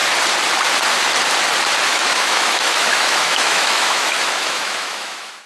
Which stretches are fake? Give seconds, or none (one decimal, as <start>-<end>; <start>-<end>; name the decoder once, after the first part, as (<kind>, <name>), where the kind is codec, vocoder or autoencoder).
1.9-5.5 (autoencoder, DAC-VAE)